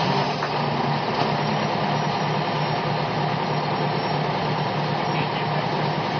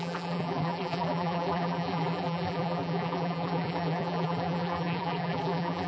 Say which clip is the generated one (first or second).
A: second